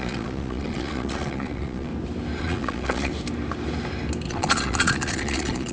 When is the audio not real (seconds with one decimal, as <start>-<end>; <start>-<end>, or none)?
0.0-1.9; 2.4-3.1; 4.3-5.7